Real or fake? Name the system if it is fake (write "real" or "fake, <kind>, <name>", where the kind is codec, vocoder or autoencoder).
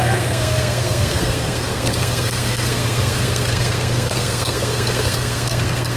fake, codec, SNAC